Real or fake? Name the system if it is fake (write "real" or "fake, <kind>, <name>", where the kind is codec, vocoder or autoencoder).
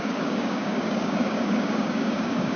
fake, codec, DAC